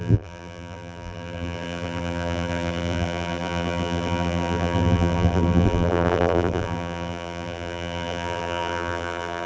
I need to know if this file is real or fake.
fake